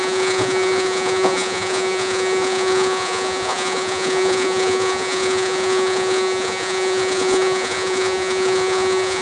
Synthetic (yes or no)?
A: yes